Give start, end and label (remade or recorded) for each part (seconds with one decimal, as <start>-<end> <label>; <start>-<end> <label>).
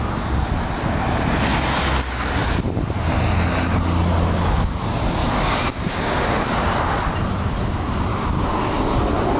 0.0-5.2 recorded; 5.2-6.5 remade; 6.5-8.1 recorded; 8.1-8.7 remade; 8.7-9.4 recorded